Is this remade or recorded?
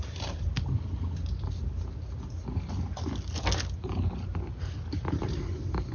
recorded